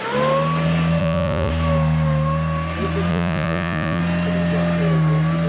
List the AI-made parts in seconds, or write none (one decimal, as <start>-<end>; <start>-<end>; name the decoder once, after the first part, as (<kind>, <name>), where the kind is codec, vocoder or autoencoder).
1.0-1.5 (vocoder, Vocos); 3.1-4.0

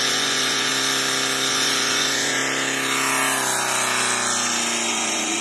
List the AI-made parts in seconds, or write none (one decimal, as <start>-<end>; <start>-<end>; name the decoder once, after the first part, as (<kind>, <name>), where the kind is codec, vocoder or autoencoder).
0.0-0.7 (vocoder, Vocos); 1.5-2.4; 4.9-5.4

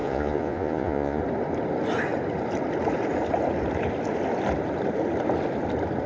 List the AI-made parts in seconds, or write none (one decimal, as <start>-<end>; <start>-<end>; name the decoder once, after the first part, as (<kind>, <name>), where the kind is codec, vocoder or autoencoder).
0.0-1.2 (vocoder, Vocos)